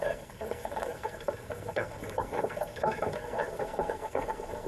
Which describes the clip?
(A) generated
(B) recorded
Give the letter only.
A